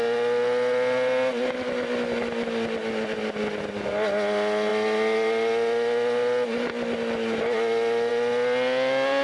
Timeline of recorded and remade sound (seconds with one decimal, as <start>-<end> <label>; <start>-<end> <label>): 0.0-9.2 recorded